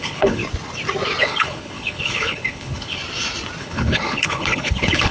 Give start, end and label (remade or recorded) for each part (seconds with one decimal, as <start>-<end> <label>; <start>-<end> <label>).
0.0-0.4 remade; 0.4-1.2 recorded; 1.2-3.0 remade; 3.0-3.6 recorded; 3.6-5.1 remade